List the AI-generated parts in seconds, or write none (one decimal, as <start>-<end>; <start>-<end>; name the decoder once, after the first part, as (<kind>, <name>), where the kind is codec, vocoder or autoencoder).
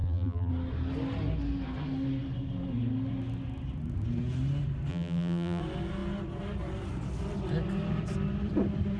0.0-0.5 (vocoder, BigVGAN v2); 4.9-5.6